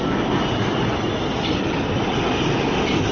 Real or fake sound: real